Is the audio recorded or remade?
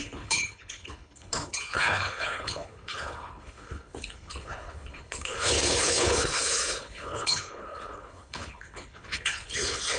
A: remade